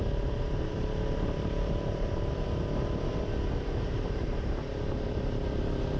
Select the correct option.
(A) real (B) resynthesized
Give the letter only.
B